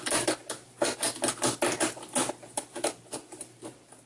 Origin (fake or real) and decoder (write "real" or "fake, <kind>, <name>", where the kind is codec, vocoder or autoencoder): real